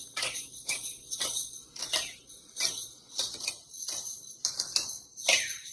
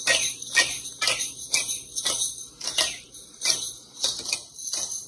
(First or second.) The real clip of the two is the second